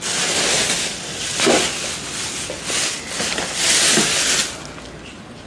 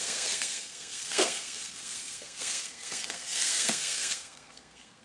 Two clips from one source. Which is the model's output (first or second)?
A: second